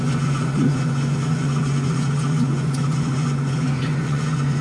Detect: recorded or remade remade